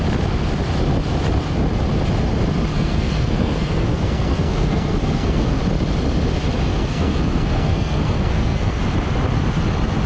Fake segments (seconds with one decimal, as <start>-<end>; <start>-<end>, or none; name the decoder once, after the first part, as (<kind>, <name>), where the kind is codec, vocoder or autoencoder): 2.7-5.6 (codec, SNAC); 6.7-8.8